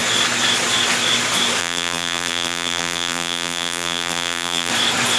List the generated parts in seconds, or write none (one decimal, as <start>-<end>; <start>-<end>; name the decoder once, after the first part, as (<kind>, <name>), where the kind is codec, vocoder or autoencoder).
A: 1.6-4.7 (vocoder, BigVGAN v2)